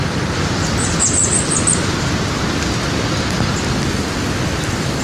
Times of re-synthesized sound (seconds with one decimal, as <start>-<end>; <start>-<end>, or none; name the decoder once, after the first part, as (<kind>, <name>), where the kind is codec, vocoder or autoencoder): none